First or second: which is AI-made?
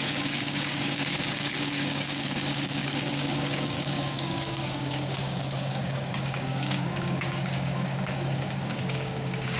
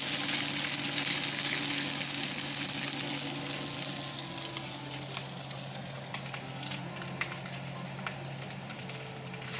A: first